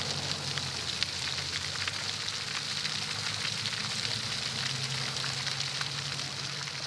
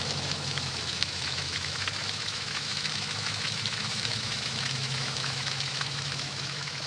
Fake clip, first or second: second